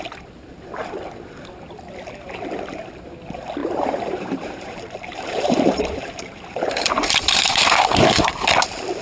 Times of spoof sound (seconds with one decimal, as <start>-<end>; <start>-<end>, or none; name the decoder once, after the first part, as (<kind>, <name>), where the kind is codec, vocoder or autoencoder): 3.6-8.3 (vocoder, BigVGAN v2)